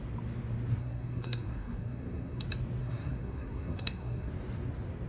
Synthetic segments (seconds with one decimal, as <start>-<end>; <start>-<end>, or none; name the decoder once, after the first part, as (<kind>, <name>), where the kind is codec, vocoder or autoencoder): 0.8-2.4 (codec, SNAC); 2.8-4.3